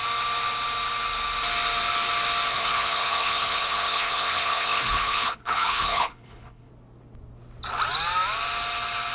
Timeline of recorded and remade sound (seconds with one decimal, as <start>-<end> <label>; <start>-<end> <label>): 0.0-2.5 recorded; 2.5-6.7 remade; 6.7-9.1 recorded